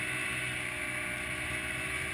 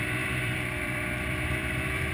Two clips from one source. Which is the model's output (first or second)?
second